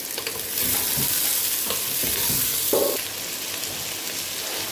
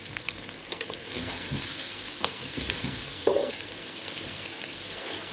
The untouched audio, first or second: first